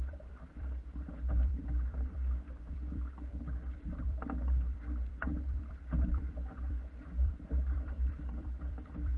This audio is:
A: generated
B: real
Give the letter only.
A